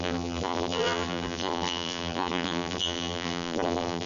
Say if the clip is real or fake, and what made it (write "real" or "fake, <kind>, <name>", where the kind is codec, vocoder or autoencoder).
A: fake, vocoder, BigVGAN v2